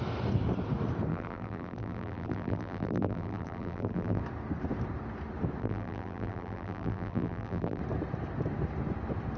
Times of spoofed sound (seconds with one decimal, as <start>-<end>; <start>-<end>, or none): 1.1-4.2; 5.6-7.8